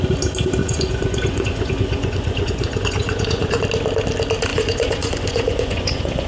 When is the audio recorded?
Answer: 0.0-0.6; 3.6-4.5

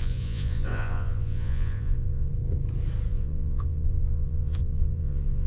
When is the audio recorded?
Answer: 2.3-3.1

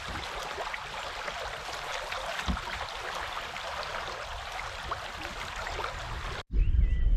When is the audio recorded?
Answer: 0.0-7.2

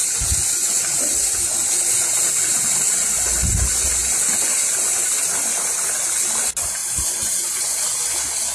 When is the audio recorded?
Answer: 0.0-6.8; 7.8-8.5

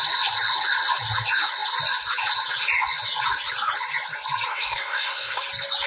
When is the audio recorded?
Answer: 0.0-4.5; 5.4-5.9

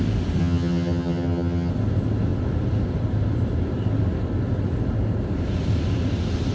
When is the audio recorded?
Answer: 0.0-0.4; 1.7-6.5

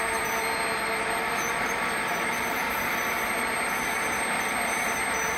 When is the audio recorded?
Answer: 0.0-5.4